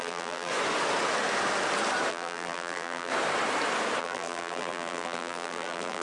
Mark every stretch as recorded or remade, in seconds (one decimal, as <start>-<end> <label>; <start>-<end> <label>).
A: 0.0-0.5 remade; 0.5-2.1 recorded; 2.1-3.1 remade; 3.1-4.0 recorded; 4.0-6.0 remade